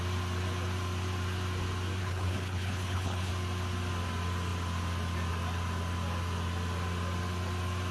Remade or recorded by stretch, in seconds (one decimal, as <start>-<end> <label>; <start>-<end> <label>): 0.0-2.0 recorded; 2.0-3.3 remade; 3.3-7.9 recorded